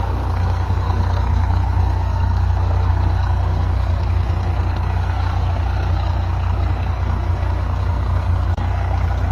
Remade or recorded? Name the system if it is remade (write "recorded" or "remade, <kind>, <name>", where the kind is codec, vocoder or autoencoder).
remade, codec, SNAC